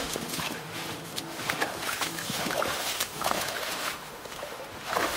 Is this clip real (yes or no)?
no